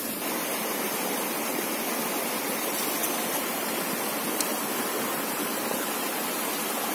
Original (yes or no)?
yes